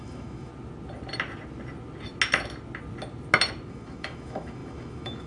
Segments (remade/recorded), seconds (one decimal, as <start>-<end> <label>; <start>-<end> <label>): 0.0-0.5 remade; 0.5-3.7 recorded; 3.7-5.3 remade